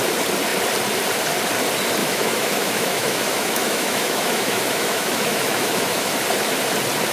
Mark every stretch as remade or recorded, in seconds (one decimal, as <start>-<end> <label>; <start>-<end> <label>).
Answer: 0.0-2.0 recorded; 2.0-6.2 remade; 6.2-7.1 recorded